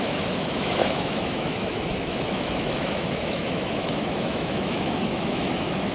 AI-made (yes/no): yes